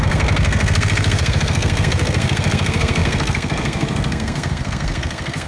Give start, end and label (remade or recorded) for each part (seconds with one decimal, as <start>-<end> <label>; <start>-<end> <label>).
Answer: 0.0-5.5 remade